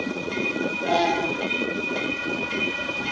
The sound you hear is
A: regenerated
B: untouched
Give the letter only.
A